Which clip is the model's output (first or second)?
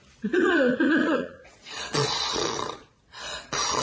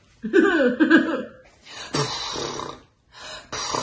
first